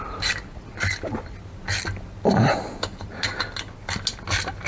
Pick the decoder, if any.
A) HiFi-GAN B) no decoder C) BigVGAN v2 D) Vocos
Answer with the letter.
B